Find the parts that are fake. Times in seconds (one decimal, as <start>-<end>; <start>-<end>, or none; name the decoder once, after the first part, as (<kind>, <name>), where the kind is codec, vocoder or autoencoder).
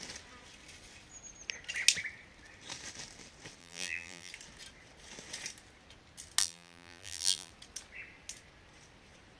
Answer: 3.6-4.3 (vocoder, BigVGAN v2); 6.4-7.5